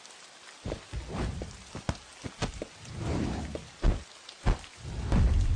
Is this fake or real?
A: real